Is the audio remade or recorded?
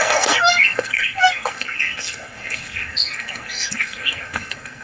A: remade